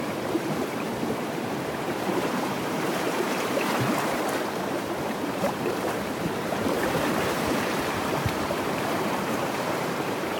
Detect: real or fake fake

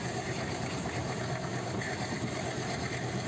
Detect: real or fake real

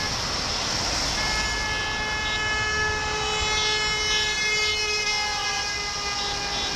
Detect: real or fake real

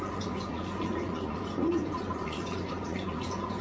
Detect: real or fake fake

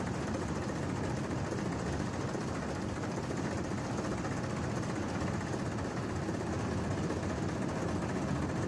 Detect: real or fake real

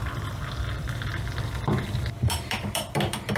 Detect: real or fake fake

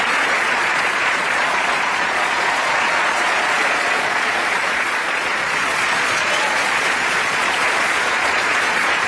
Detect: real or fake fake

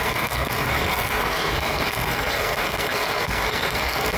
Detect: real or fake fake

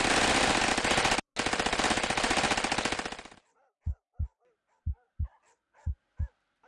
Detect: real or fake real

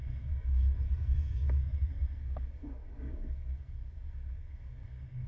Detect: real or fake fake